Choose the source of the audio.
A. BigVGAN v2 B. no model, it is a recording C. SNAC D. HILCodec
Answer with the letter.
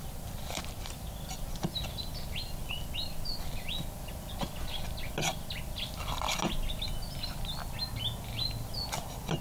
B